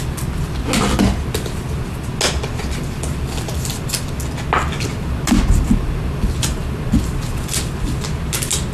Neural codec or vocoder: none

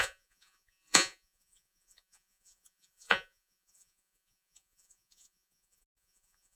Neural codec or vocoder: vocoder, Vocos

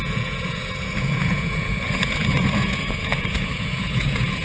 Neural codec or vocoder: vocoder, Vocos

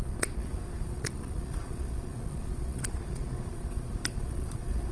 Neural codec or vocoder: vocoder, Vocos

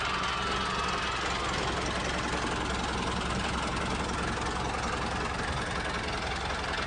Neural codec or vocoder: none